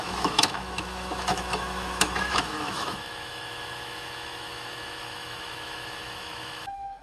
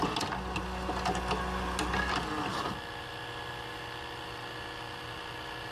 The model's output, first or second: first